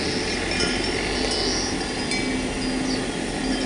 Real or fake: real